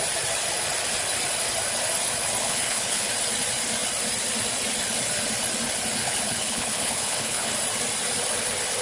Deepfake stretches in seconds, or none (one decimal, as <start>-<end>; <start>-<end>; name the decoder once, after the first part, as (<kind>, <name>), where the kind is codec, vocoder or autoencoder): 2.4-3.1 (codec, HILCodec); 6.0-7.5